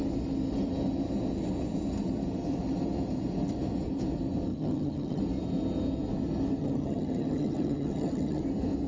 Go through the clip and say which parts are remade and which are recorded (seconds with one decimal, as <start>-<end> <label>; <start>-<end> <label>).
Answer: 0.0-4.5 recorded; 4.5-5.2 remade; 5.2-6.6 recorded; 6.6-8.4 remade; 8.4-8.9 recorded